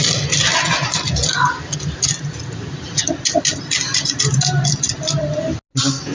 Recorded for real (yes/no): yes